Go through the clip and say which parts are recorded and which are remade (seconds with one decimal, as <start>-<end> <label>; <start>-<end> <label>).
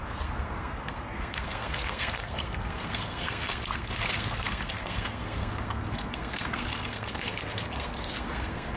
0.0-8.8 remade